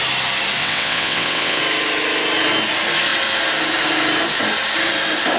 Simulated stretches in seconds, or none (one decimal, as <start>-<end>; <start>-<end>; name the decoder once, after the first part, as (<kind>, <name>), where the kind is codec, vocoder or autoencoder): 0.6-1.6 (vocoder, WaveNeXt)